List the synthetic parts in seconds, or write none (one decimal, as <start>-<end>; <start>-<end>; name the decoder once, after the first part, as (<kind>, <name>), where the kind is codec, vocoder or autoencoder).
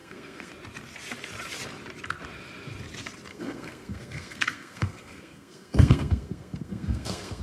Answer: 0.0-0.5 (codec, SNAC); 3.3-7.4